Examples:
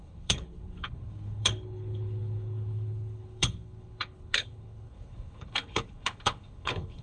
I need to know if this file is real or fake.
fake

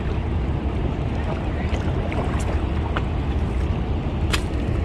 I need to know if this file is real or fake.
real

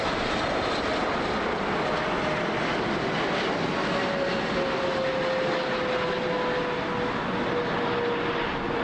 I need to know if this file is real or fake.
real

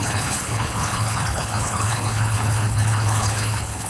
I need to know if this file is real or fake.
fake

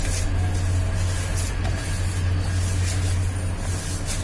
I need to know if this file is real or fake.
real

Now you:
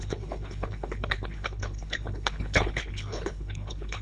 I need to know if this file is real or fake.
fake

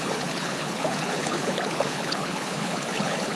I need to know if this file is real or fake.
fake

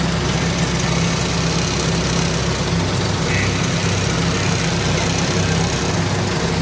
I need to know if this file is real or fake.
real